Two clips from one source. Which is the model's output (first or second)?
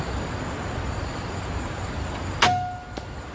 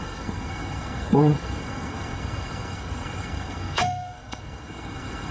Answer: second